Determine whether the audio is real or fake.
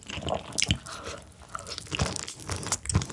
real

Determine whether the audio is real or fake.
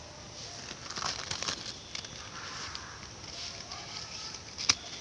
real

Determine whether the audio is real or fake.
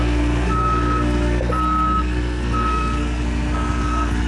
fake